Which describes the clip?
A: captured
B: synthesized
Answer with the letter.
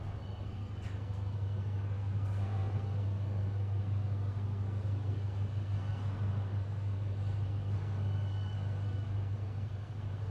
B